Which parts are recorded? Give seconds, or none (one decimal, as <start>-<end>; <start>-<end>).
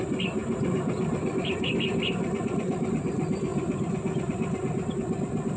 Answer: 0.0-5.6